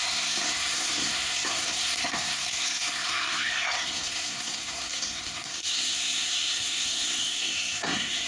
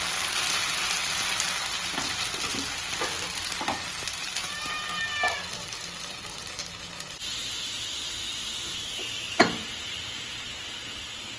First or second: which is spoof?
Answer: first